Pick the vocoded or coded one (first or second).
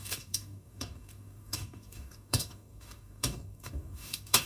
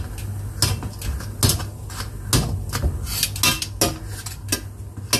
first